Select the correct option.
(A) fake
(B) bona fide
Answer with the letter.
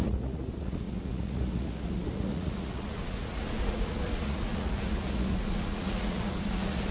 A